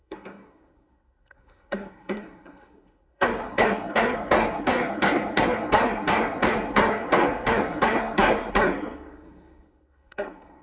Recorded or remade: remade